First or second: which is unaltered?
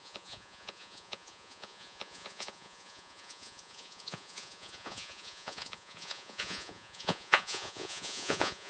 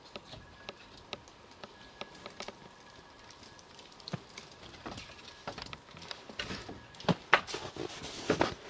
second